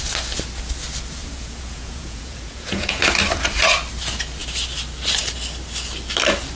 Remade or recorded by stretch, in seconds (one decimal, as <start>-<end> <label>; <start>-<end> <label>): 0.0-1.2 recorded; 1.2-3.0 remade; 3.0-6.6 recorded